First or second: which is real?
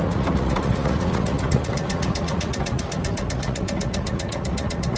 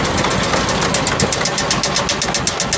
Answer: second